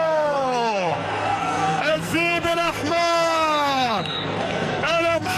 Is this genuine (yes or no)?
no